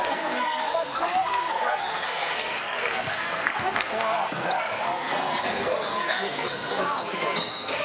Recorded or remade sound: remade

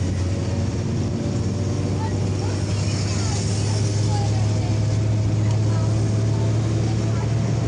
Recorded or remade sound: recorded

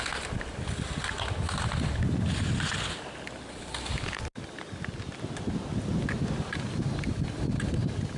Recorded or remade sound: recorded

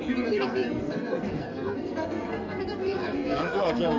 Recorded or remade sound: remade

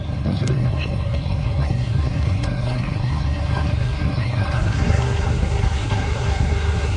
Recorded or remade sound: remade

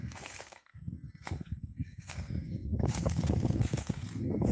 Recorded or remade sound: remade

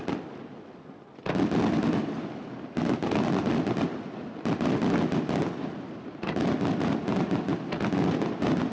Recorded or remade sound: recorded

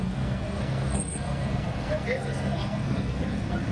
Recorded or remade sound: remade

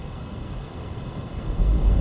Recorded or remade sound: remade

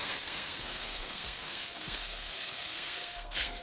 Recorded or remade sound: remade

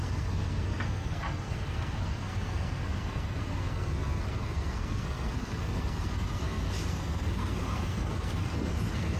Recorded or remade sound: remade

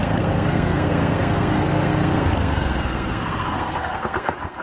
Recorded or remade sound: remade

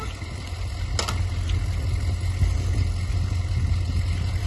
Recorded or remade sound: recorded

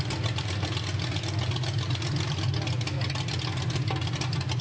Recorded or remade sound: recorded